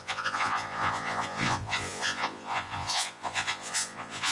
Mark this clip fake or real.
fake